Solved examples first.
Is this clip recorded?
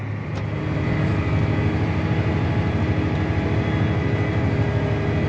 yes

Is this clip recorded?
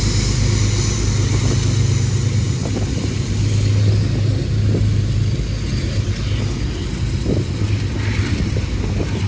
yes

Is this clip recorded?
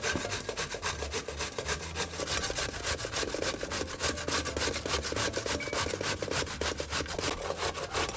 yes